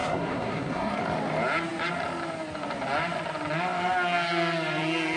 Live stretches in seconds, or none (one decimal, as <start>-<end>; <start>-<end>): 1.0-5.2